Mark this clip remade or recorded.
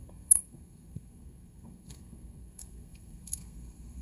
remade